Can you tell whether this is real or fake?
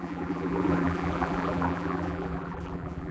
fake